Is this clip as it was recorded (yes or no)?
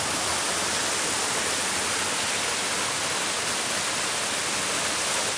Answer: yes